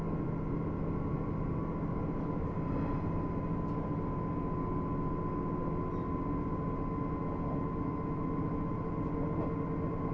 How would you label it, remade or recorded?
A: recorded